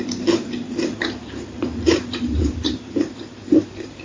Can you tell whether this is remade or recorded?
remade